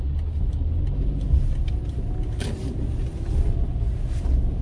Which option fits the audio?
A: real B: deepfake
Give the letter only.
A